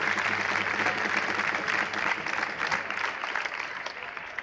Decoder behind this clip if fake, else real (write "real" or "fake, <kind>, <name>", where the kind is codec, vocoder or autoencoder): real